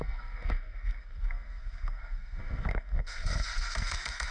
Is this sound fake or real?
fake